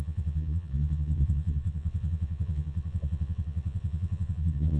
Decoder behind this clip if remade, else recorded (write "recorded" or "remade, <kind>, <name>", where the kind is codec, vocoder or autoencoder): remade, vocoder, Vocos